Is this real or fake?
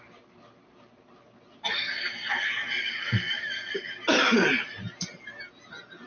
real